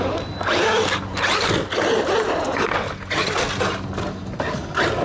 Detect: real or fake real